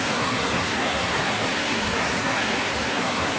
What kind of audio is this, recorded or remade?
remade